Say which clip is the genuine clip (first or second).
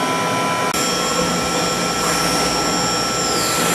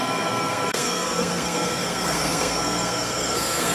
first